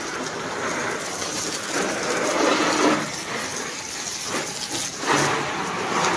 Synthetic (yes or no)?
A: no